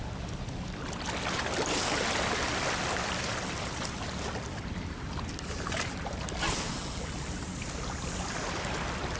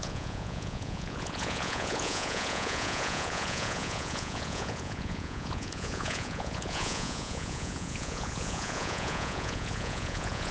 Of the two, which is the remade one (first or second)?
second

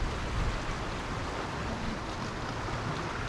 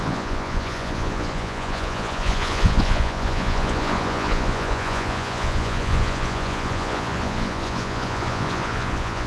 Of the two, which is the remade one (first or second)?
second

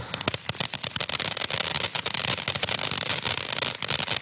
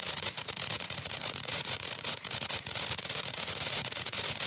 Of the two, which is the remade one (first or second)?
second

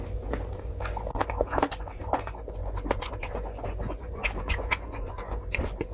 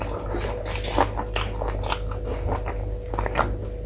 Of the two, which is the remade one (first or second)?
first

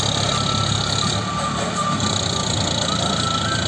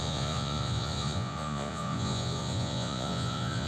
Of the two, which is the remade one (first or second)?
second